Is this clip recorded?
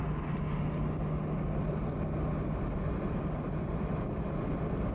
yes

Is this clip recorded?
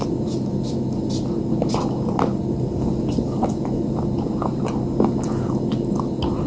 yes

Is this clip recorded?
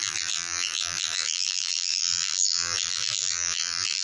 no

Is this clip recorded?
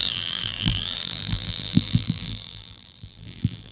no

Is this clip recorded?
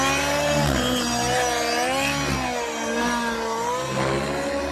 yes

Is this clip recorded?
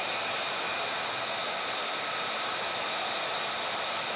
yes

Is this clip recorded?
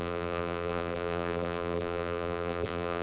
no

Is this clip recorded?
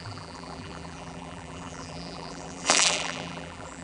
no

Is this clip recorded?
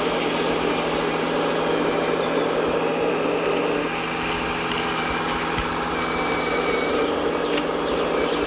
yes